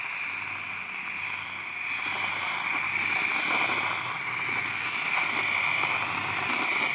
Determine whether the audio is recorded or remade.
recorded